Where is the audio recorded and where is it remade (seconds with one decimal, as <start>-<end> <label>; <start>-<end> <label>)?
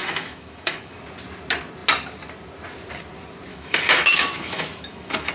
0.0-1.0 remade; 1.0-3.5 recorded; 3.5-5.3 remade